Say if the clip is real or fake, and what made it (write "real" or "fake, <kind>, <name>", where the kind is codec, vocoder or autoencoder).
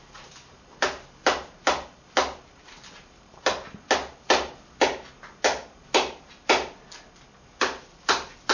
real